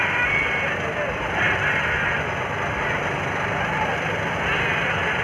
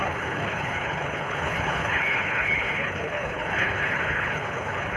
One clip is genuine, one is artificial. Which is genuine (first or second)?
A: first